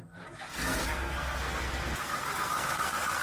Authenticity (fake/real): fake